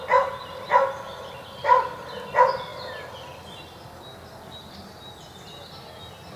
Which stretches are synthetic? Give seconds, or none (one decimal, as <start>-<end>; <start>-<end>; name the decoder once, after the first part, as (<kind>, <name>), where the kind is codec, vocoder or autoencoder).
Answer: none